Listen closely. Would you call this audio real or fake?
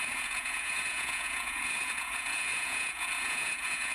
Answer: fake